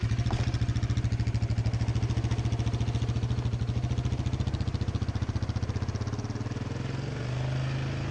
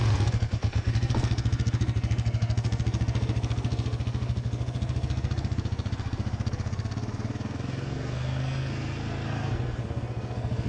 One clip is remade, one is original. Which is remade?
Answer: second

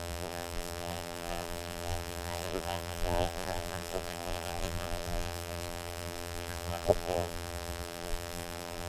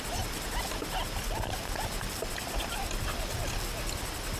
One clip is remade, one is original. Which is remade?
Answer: first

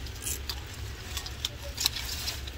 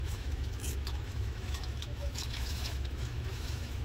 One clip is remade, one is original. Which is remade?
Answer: second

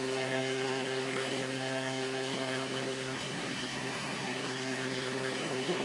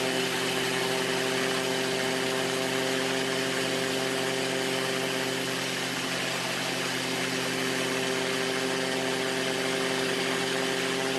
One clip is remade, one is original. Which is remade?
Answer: first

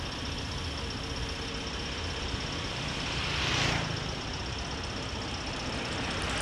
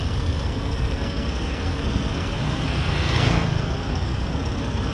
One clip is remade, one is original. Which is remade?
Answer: second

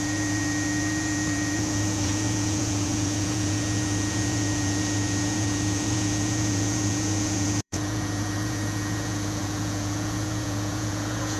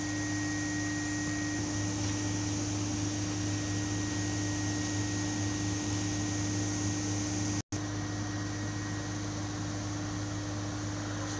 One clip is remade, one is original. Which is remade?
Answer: first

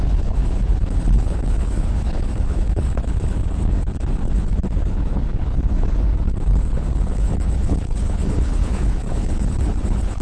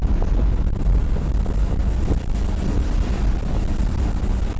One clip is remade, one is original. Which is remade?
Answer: first